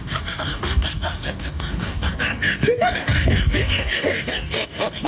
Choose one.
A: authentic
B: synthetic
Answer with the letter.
B